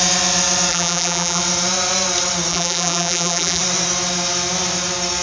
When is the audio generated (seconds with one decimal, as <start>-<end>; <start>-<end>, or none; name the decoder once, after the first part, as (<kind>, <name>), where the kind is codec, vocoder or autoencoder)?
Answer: 0.7-1.4 (vocoder, BigVGAN v2); 2.5-3.6